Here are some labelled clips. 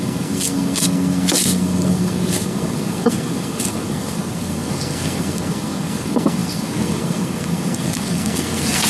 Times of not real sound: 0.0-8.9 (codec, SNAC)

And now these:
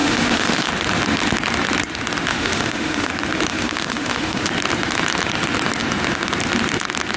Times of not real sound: 0.0-0.7 (autoencoder, DAC-VAE); 2.3-3.1; 3.5-4.5

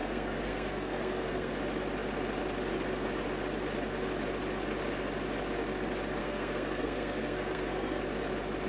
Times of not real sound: 0.0-1.5 (codec, SNAC); 6.2-8.0

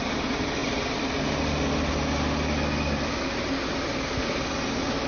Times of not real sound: none

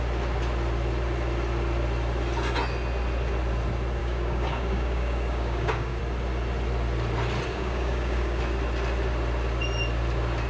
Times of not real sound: 4.0-6.0 (codec, DAC); 7.5-8.4